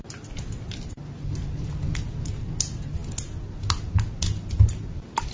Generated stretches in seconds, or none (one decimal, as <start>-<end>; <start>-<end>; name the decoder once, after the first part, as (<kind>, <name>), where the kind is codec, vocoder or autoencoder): none